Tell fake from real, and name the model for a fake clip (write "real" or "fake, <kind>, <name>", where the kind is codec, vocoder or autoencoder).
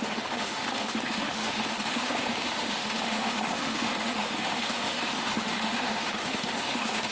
fake, autoencoder, DAC-VAE